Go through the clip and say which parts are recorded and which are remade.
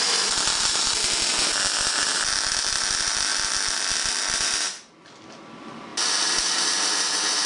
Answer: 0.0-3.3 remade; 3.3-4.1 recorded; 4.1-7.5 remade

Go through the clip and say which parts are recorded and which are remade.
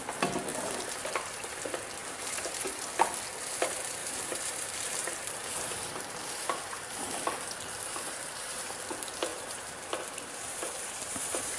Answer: 0.0-0.5 recorded; 0.5-1.3 remade; 1.3-2.0 recorded; 2.0-2.7 remade; 2.7-4.0 recorded; 4.0-8.7 remade; 8.7-9.3 recorded; 9.3-11.6 remade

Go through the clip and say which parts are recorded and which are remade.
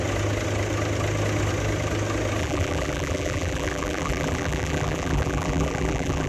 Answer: 0.0-2.4 recorded; 2.4-6.3 remade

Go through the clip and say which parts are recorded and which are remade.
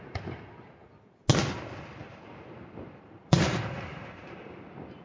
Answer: 0.0-2.0 recorded; 2.0-4.4 remade; 4.4-5.0 recorded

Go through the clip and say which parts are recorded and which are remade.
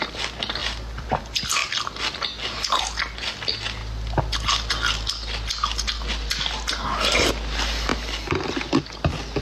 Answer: 0.0-0.6 recorded; 0.6-1.2 remade; 1.2-9.4 recorded